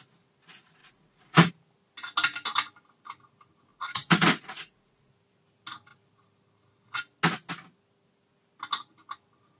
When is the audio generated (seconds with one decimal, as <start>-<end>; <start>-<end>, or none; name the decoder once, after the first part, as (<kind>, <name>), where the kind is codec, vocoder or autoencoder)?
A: 0.8-1.5 (vocoder, Vocos); 3.7-5.1